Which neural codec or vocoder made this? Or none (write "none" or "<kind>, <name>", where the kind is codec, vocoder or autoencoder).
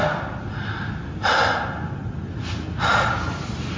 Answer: none